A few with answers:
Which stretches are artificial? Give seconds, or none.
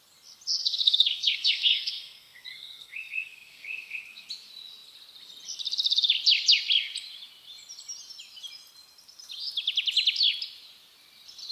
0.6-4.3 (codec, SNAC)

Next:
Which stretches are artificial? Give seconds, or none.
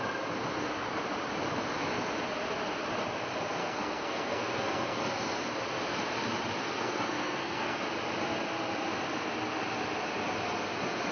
3.6-5.0 (codec, SNAC); 6.6-7.8